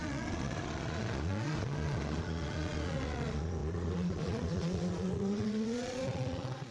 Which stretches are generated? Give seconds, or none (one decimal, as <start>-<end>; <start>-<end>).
0.0-6.7

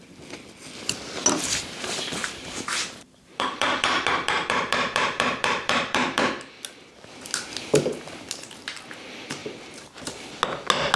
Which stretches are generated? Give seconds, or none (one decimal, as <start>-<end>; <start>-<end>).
2.2-6.3; 9.4-10.3

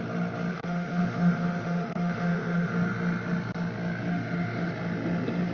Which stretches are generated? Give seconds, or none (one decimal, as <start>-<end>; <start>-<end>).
0.5-2.7; 4.1-4.7

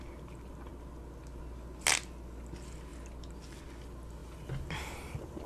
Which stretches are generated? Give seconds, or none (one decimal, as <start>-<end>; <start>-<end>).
none

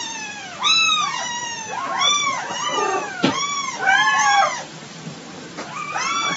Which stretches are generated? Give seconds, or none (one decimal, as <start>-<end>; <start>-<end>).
0.4-1.4; 2.7-5.2

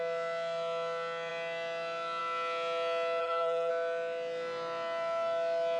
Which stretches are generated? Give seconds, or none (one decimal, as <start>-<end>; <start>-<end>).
3.2-3.7